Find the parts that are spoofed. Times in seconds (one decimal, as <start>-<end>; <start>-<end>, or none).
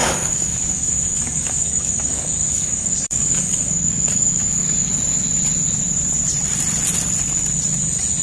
0.0-4.9